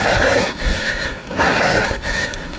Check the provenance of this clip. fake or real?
fake